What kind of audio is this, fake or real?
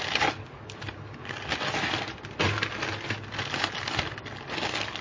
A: real